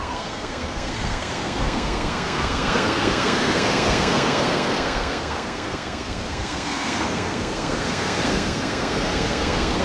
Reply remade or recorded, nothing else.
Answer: remade